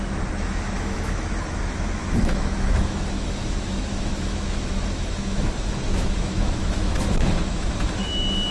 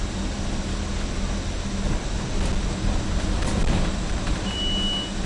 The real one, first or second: second